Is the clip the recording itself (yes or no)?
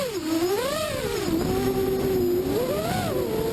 yes